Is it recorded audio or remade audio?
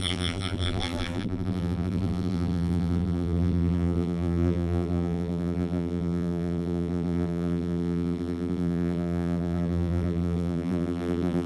remade